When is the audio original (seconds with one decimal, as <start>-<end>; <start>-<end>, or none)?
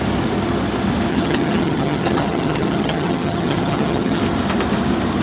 0.0-1.1; 4.2-5.2